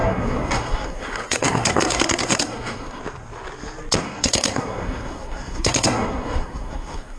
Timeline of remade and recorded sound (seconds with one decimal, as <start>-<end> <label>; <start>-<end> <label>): 0.0-3.0 remade; 3.0-4.0 recorded; 4.0-7.2 remade